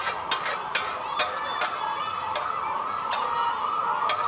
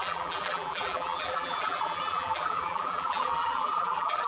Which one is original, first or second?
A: first